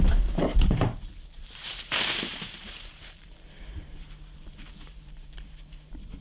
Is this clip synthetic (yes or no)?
yes